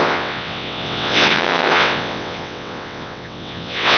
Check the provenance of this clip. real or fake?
fake